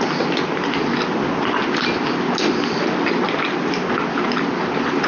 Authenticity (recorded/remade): recorded